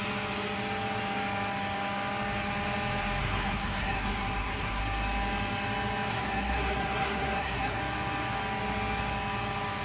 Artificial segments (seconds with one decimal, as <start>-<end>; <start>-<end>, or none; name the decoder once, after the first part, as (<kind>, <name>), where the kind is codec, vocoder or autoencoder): 3.2-4.8 (codec, SNAC); 6.1-7.8